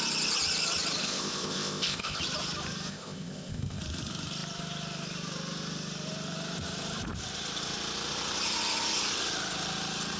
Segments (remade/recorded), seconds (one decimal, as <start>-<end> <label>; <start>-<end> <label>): 0.0-1.0 recorded; 1.0-2.2 remade; 2.2-2.9 recorded; 2.9-3.8 remade; 3.8-10.2 recorded